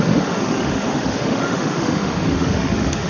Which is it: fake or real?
fake